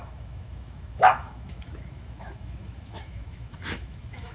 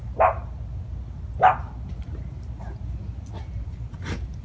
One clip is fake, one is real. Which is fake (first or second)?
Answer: first